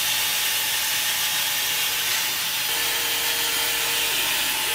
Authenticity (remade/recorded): recorded